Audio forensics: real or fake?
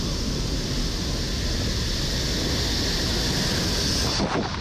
real